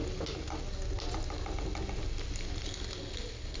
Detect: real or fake real